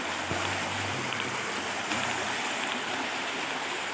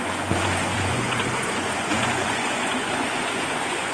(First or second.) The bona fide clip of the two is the first